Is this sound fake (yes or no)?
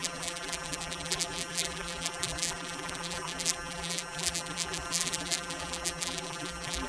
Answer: yes